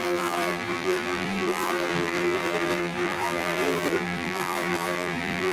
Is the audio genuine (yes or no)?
no